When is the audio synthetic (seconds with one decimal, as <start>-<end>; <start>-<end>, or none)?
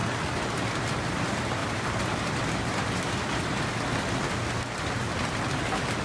1.6-3.5